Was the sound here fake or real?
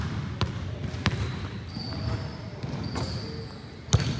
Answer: real